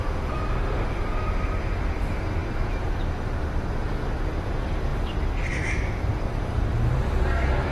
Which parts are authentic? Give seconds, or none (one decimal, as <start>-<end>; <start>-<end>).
none